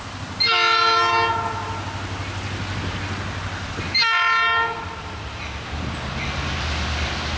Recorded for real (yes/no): yes